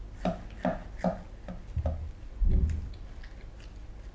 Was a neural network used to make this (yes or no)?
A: no